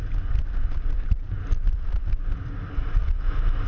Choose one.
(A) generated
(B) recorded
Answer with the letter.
B